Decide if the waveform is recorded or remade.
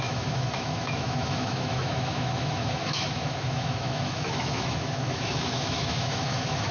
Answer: remade